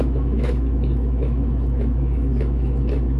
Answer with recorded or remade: remade